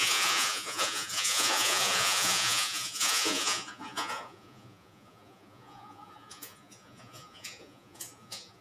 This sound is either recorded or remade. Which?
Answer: remade